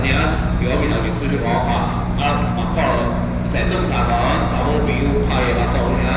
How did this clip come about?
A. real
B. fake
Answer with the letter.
A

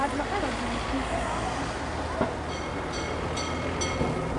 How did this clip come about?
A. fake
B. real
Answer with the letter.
B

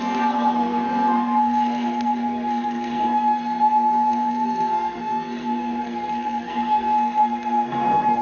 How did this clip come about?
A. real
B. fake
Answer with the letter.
B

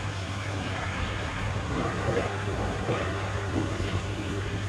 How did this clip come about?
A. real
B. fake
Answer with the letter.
B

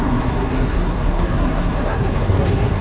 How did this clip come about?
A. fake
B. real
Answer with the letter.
A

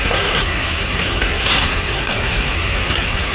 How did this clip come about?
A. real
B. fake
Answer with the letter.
B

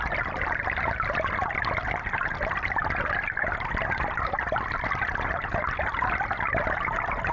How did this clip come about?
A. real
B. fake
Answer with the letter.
A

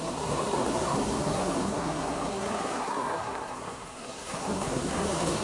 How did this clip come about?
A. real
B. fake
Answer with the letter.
B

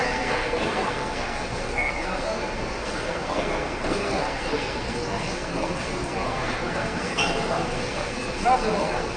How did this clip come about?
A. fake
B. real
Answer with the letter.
A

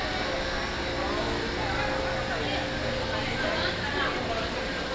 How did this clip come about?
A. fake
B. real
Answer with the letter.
B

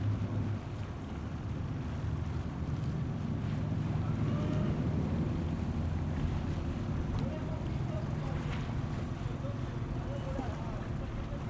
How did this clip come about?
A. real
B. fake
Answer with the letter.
A